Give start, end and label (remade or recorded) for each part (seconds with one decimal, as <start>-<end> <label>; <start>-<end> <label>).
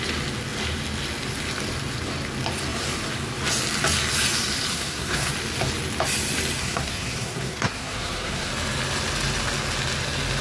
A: 0.0-4.7 recorded; 4.7-5.3 remade; 5.3-6.6 recorded; 6.6-8.5 remade; 8.5-10.4 recorded